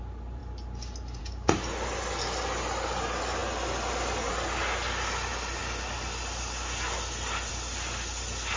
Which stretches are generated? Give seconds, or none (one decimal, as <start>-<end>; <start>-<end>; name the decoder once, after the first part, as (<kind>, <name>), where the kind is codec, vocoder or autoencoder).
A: none